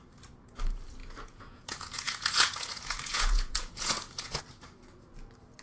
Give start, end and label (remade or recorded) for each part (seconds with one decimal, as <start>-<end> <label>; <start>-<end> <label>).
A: 0.0-1.0 recorded; 1.0-4.4 remade; 4.4-5.6 recorded